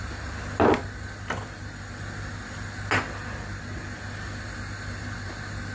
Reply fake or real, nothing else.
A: real